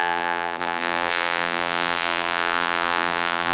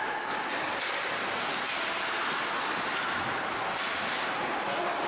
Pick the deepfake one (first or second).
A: first